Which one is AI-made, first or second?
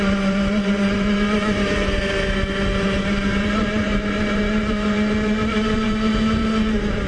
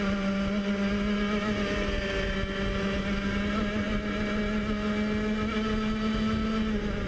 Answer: first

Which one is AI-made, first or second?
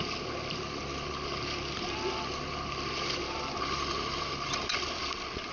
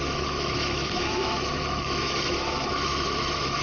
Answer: second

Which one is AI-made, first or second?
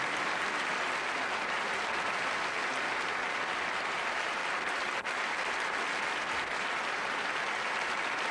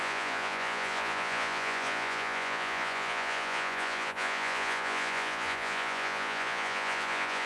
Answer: second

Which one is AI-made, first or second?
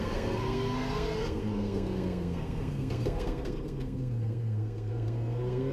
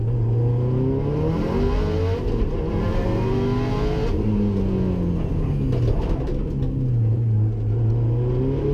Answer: first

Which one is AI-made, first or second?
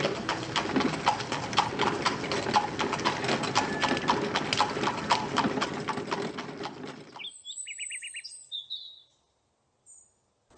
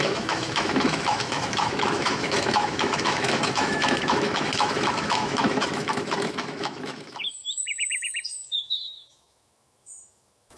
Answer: second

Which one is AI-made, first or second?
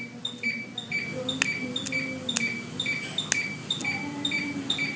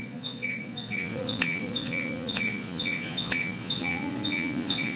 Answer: second